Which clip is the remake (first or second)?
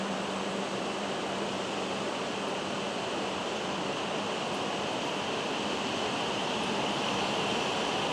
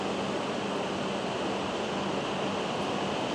first